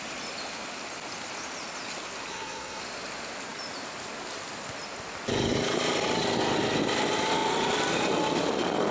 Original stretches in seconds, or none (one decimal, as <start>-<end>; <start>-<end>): 0.0-2.3; 2.8-8.9